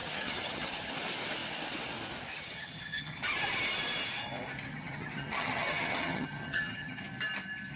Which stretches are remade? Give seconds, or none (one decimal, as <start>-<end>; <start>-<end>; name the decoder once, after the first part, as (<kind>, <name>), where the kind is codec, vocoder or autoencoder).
0.0-0.9 (vocoder, HiFi-GAN); 2.3-3.2; 4.7-7.0